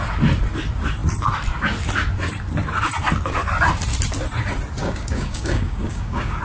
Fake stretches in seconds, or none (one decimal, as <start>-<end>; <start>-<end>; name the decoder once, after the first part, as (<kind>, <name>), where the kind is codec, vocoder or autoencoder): 4.8-6.4 (codec, DAC)

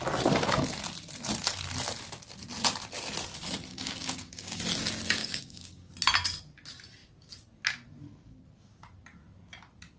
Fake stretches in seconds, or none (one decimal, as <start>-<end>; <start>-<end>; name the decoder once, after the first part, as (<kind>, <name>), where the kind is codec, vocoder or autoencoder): 3.7-4.6 (codec, DAC); 5.2-5.9

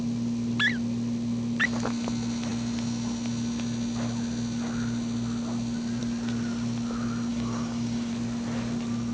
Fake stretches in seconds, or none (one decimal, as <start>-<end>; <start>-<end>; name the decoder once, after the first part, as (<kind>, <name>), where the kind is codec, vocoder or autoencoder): 7.3-8.1 (codec, DAC)

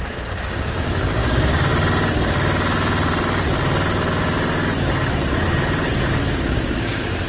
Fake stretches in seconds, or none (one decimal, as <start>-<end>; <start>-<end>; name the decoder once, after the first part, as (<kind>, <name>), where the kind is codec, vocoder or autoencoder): 0.0-1.7 (codec, DAC); 6.1-7.3

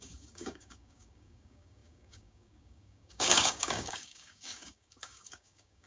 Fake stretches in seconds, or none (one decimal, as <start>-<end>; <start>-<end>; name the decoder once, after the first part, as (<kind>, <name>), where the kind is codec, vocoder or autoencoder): 0.0-5.9 (codec, DAC)

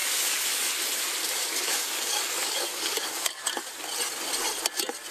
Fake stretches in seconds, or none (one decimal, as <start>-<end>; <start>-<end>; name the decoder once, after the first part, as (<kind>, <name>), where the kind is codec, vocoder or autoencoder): 0.0-0.7 (codec, DAC); 1.2-3.5